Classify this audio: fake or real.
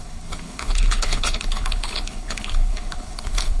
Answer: fake